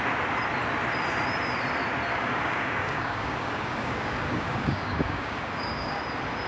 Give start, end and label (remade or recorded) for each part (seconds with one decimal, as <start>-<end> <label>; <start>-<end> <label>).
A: 0.0-2.1 recorded; 2.1-6.0 remade; 6.0-6.5 recorded